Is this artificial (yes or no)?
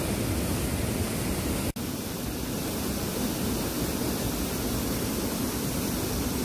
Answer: no